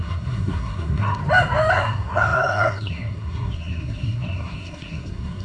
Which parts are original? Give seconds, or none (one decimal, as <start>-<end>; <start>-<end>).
1.2-1.7